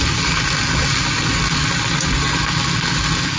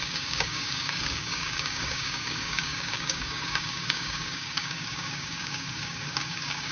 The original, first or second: first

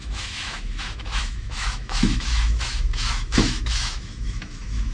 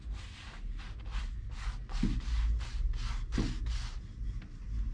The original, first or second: second